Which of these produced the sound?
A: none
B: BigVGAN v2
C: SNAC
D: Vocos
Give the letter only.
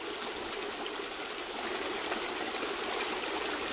A